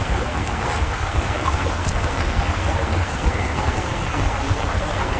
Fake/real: fake